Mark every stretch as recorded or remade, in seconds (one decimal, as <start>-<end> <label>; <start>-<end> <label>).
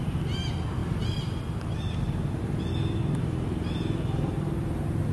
0.0-5.1 recorded